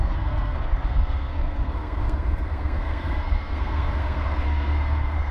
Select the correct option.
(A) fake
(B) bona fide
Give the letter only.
A